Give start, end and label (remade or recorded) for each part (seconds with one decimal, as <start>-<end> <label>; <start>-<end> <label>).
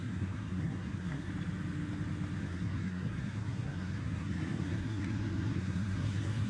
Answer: 0.0-1.3 remade; 1.3-2.4 recorded; 2.4-6.5 remade